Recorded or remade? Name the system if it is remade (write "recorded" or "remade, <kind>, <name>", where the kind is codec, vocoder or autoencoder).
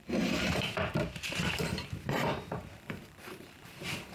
remade, vocoder, BigVGAN v2